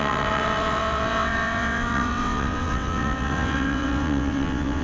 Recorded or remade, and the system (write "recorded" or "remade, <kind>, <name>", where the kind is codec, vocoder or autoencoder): remade, vocoder, WaveNeXt